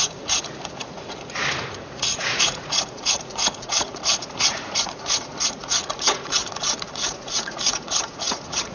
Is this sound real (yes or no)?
no